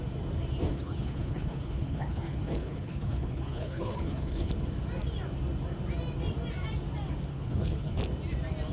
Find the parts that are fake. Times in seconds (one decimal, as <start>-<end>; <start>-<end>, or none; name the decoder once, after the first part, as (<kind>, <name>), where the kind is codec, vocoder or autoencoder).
0.7-4.5 (codec, HILCodec); 7.3-8.0